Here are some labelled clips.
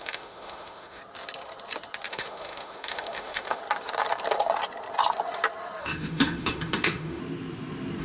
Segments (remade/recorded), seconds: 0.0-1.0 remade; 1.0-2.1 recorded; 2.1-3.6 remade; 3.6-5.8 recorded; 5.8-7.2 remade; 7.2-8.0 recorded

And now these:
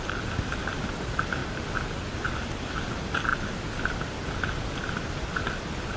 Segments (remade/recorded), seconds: 0.0-6.0 recorded

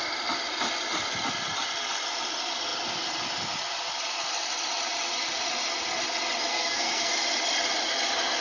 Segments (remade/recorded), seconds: 0.0-6.5 recorded; 6.5-7.1 remade; 7.1-8.4 recorded

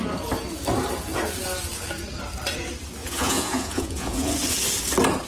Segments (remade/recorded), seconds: 0.0-3.0 recorded; 3.0-4.3 remade; 4.3-5.3 recorded

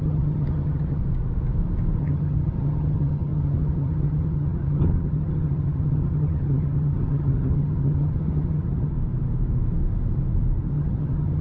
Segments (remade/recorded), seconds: 0.0-1.0 remade; 1.0-2.0 recorded; 2.0-8.9 remade; 8.9-10.7 recorded; 10.7-11.4 remade

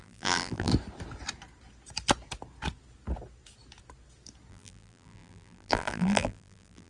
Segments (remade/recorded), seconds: 0.0-0.7 remade; 0.7-4.5 recorded; 4.5-6.9 remade

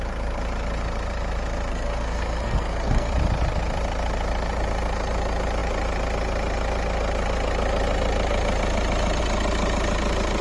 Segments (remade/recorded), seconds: 0.0-1.7 recorded; 1.7-3.1 remade; 3.1-10.4 recorded